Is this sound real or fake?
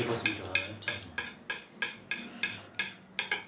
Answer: real